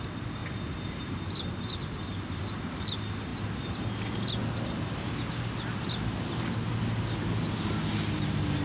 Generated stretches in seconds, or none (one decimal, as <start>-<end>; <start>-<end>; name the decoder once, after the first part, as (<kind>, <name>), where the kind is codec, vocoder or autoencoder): none